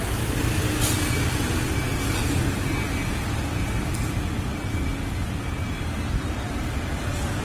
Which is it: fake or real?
real